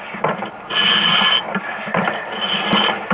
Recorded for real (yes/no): yes